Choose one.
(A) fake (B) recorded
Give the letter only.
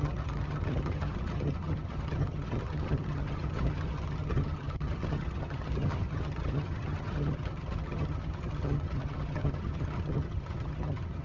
A